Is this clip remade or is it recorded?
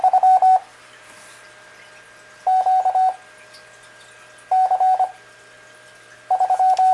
recorded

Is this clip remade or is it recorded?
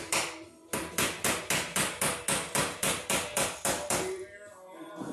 recorded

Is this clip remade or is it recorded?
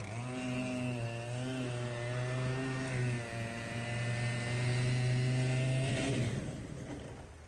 recorded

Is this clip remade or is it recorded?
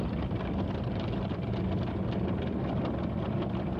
recorded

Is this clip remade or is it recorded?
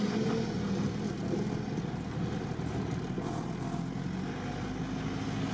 recorded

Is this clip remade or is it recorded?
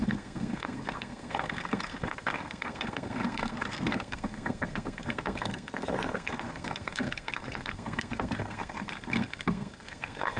remade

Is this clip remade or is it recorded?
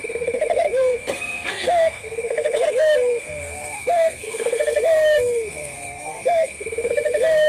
remade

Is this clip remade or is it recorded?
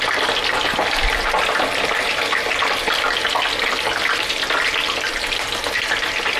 recorded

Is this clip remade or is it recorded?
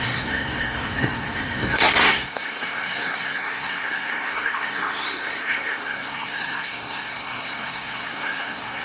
remade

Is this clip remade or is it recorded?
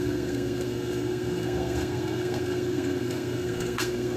remade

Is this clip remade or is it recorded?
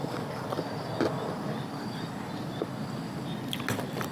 recorded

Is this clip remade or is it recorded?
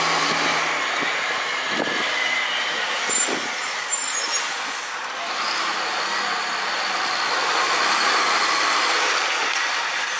recorded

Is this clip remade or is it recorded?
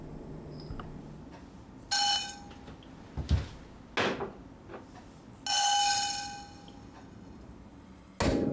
recorded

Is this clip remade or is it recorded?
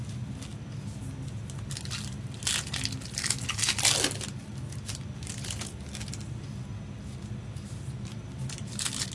recorded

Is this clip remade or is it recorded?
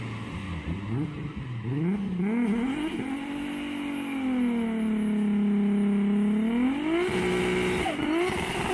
recorded